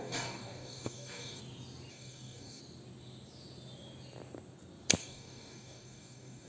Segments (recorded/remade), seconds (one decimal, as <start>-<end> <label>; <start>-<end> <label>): 0.0-1.4 remade; 1.4-1.9 recorded; 1.9-2.6 remade; 2.6-5.0 recorded; 5.0-6.5 remade